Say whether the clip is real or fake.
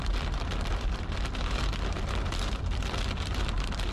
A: fake